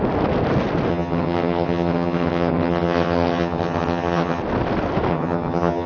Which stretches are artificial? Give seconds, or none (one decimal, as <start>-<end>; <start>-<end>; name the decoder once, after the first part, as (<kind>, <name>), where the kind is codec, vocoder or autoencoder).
0.9-4.4 (vocoder, HiFi-GAN); 5.1-5.9

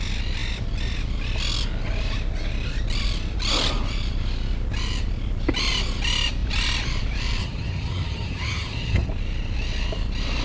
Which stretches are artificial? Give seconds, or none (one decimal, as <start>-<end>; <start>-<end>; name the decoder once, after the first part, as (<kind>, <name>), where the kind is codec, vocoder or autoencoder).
7.4-9.1 (vocoder, HiFi-GAN)

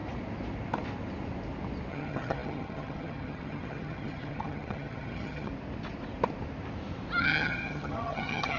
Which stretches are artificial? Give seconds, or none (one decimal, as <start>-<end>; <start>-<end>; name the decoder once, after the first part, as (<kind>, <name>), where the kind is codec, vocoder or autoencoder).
1.9-5.5 (vocoder, HiFi-GAN); 7.2-8.6

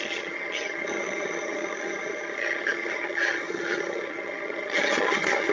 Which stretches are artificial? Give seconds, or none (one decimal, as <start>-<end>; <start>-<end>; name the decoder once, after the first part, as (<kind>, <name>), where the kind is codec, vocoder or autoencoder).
0.0-5.5 (vocoder, HiFi-GAN)

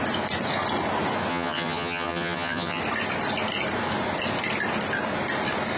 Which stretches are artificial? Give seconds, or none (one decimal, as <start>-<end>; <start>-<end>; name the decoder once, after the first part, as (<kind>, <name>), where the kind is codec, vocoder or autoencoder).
1.3-2.8 (vocoder, HiFi-GAN)

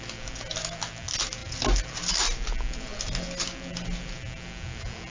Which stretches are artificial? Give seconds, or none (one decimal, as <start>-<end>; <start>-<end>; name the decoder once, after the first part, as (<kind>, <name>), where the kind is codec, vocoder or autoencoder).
none

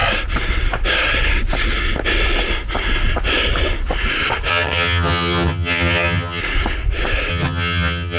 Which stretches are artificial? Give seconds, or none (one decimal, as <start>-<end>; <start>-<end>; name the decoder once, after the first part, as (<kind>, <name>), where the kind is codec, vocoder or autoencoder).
4.5-6.4 (vocoder, HiFi-GAN); 7.3-8.2

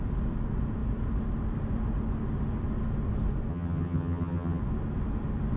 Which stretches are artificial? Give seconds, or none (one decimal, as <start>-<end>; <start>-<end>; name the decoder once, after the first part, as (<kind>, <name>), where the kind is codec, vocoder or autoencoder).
3.5-4.6 (vocoder, HiFi-GAN)